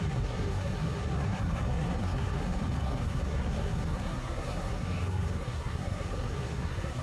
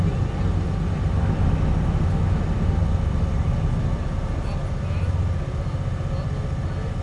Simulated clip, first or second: first